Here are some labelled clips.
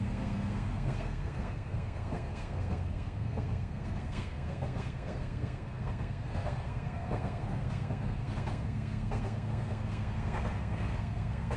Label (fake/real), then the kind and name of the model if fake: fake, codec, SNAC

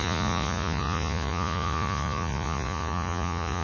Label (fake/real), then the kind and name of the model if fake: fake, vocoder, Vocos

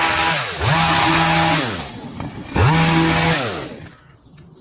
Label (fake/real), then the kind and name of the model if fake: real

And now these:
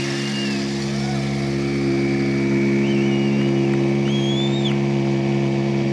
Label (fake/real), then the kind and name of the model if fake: real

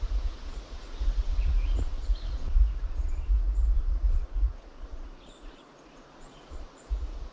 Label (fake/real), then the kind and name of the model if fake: fake, vocoder, Vocos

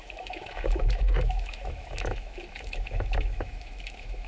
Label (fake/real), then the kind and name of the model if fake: fake, autoencoder, DAC-VAE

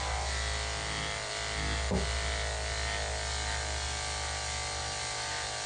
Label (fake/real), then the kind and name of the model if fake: real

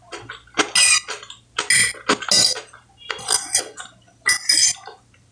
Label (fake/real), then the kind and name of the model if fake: real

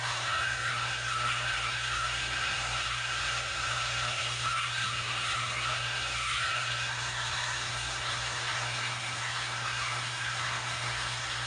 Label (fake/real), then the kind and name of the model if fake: fake, codec, SNAC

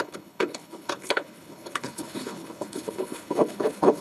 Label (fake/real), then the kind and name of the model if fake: fake, codec, HILCodec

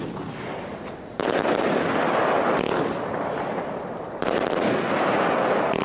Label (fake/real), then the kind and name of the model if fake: real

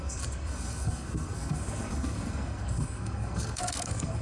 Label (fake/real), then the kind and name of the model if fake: fake, codec, SNAC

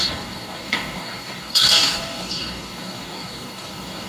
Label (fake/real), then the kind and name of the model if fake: fake, codec, DAC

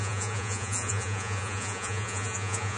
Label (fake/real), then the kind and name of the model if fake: fake, vocoder, Vocos